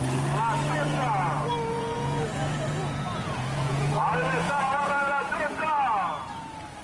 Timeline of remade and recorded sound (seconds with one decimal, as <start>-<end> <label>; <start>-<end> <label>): 0.0-1.7 recorded; 1.7-5.8 remade; 5.8-6.8 recorded